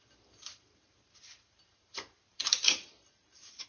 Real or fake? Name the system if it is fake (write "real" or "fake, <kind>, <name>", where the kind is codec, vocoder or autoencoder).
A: fake, vocoder, BigVGAN v2